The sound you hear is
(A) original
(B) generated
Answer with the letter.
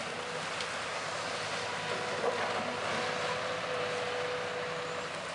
A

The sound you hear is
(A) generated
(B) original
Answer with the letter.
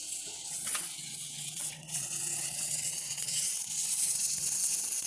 A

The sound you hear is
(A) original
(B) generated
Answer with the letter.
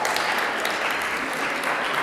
A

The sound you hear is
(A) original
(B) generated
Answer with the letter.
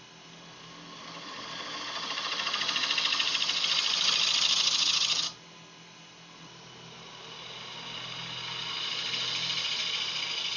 A